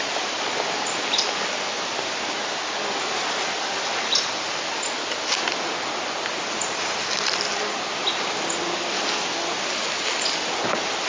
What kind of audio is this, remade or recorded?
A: recorded